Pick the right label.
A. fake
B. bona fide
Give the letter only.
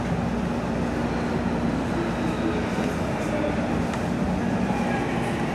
B